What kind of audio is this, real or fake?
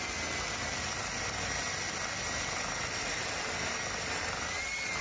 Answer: real